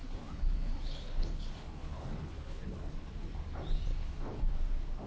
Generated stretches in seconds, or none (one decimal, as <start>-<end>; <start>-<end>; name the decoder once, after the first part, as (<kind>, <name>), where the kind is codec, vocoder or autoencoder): 0.0-3.1 (codec, HILCodec); 3.9-4.4